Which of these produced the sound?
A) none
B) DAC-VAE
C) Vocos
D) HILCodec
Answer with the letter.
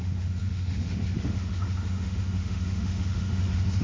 B